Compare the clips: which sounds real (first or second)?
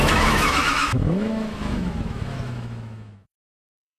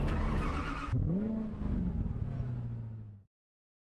second